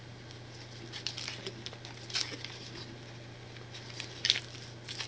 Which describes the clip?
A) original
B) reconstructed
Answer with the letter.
A